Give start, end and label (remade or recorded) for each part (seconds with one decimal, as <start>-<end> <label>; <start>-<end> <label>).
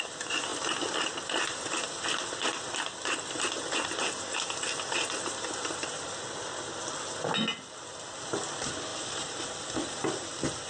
0.0-8.9 recorded; 8.9-10.2 remade; 10.2-10.7 recorded